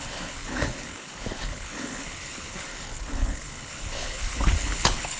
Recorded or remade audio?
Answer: remade